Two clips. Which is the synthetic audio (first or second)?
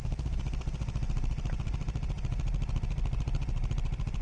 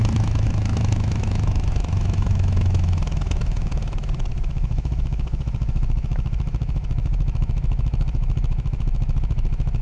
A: second